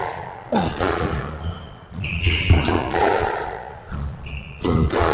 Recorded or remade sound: remade